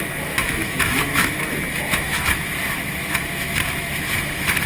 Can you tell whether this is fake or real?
fake